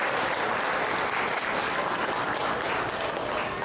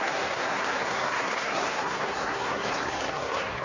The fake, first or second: second